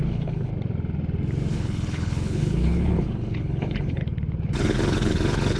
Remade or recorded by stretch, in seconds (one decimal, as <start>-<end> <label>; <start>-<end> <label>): 0.0-0.5 remade; 0.5-1.5 recorded; 1.5-4.0 remade; 4.0-4.6 recorded; 4.6-5.6 remade

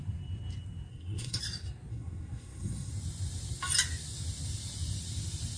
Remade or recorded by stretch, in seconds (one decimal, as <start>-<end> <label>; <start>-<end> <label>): 0.0-0.9 recorded; 0.9-1.4 remade; 1.4-1.9 recorded; 1.9-2.9 remade; 2.9-5.6 recorded

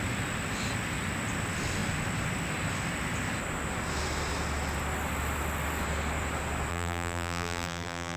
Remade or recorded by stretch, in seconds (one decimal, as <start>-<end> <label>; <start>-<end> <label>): 0.0-6.7 recorded; 6.7-8.2 remade

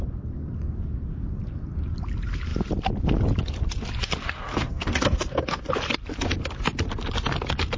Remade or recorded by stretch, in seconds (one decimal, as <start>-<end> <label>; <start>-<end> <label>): 0.0-4.5 recorded; 4.5-5.7 remade; 5.7-7.8 recorded